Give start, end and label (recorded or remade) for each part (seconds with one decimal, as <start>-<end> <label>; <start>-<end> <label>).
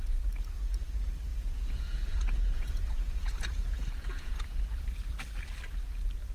0.0-1.3 recorded; 1.3-5.1 remade; 5.1-6.3 recorded